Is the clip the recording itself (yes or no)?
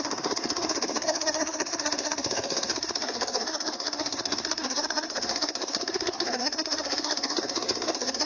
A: no